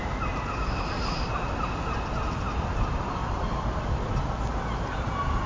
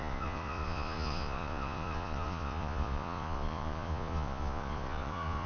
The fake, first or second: second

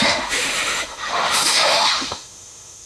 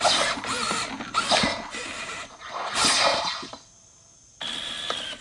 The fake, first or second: first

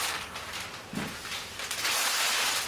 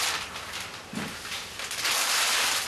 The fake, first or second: second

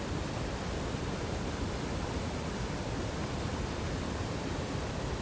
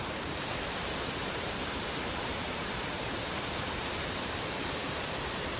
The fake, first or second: second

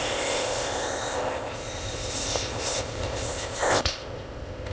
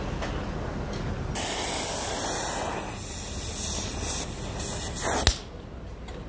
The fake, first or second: first